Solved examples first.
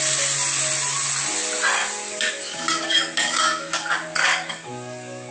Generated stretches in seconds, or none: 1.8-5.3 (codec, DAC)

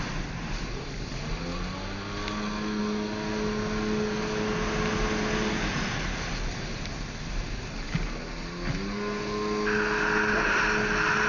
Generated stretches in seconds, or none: none